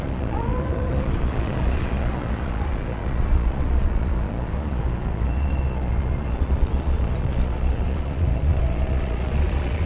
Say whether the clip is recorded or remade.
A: remade